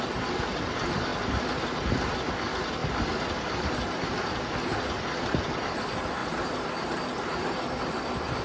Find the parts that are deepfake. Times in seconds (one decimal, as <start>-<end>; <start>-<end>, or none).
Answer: none